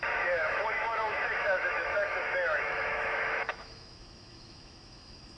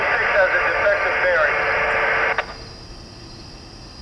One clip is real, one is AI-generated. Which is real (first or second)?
second